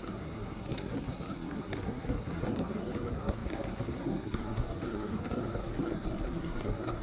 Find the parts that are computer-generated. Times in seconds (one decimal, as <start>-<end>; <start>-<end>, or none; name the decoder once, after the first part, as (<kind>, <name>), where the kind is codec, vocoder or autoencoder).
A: 0.0-7.0 (codec, SNAC)